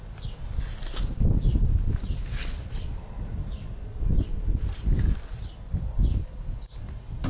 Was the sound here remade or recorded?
recorded